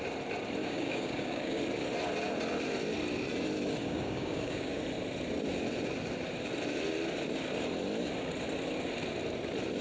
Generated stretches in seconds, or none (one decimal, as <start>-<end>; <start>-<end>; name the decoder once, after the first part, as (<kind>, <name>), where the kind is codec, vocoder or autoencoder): 0.6-1.6 (codec, DAC); 3.8-4.8